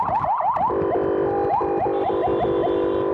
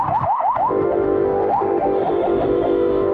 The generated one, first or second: second